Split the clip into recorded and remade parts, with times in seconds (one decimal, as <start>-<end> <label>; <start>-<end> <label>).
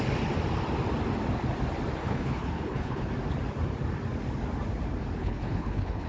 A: 0.0-2.0 recorded; 2.0-3.1 remade; 3.1-5.2 recorded; 5.2-6.1 remade